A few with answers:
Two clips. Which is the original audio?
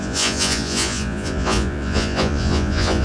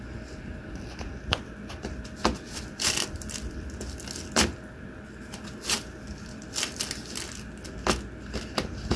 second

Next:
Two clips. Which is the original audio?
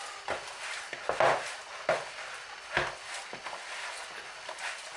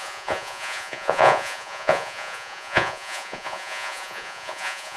first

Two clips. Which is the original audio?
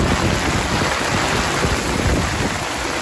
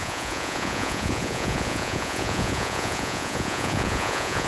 first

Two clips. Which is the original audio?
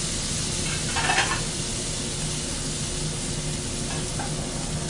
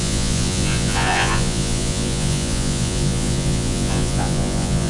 first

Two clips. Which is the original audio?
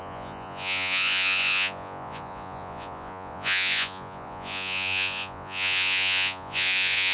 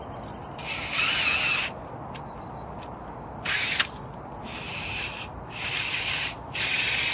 second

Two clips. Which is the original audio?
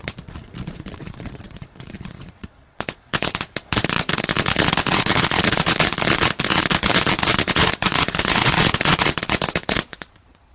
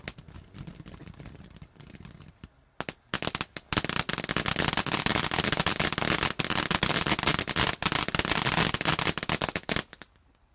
second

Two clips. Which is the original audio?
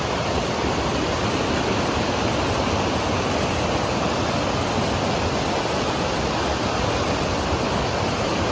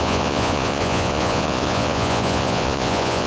first